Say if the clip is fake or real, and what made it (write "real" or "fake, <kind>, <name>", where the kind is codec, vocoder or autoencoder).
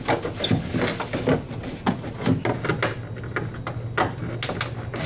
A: real